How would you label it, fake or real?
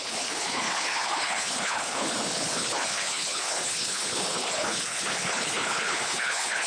fake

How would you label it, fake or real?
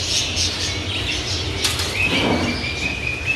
real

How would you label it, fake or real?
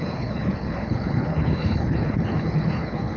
fake